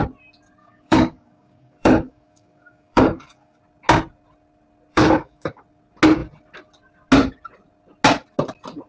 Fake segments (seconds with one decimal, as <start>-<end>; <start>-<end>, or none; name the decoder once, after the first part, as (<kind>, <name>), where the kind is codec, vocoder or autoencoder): 0.6-3.6 (codec, DAC); 4.9-5.6